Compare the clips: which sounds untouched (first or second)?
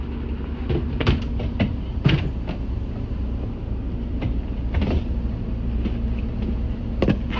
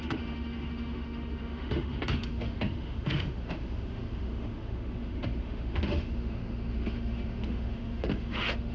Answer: first